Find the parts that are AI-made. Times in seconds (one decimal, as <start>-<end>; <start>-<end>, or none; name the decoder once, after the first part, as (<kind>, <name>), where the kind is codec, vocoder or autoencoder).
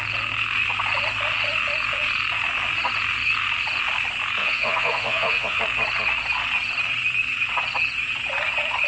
4.4-5.6 (vocoder, Vocos)